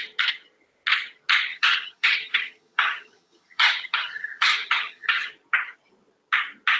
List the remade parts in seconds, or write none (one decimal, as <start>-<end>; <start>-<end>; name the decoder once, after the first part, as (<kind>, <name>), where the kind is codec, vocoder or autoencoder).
1.5-5.3 (vocoder, HiFi-GAN)